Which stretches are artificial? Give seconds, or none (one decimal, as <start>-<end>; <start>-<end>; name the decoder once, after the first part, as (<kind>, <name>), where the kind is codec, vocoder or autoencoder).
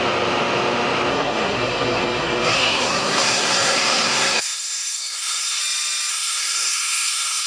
1.1-5.6 (codec, SNAC); 6.1-7.5